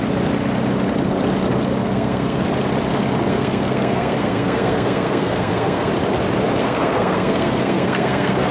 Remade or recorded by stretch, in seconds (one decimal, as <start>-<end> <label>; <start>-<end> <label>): 0.0-1.8 recorded; 1.8-2.4 remade; 2.4-3.3 recorded; 3.3-5.9 remade; 5.9-6.6 recorded; 6.6-8.5 remade